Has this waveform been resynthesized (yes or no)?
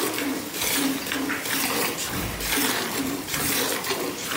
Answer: no